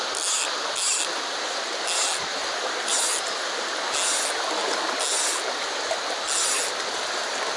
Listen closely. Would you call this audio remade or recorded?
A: recorded